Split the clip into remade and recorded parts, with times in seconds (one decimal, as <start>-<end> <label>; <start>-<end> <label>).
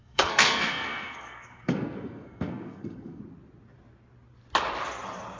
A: 0.0-3.2 remade; 3.2-5.4 recorded